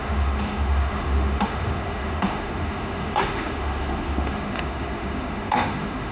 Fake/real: fake